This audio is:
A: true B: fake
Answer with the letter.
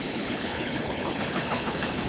B